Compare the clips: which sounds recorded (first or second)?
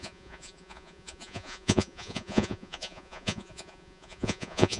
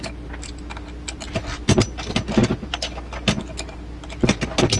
second